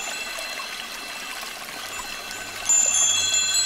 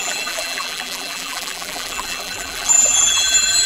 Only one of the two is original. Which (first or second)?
first